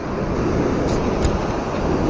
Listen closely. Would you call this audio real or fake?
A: real